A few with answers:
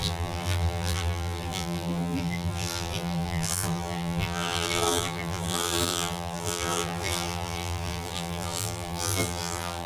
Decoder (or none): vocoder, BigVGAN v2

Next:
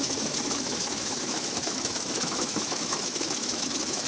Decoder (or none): autoencoder, DAC-VAE